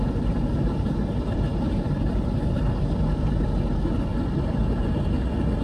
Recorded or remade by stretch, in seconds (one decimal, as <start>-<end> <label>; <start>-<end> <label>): 0.0-0.5 recorded; 0.5-1.0 remade; 1.0-5.6 recorded